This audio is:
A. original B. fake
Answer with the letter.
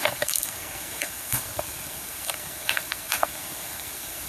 B